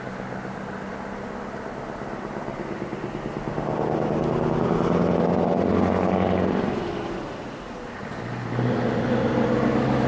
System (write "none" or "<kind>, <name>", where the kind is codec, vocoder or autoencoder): none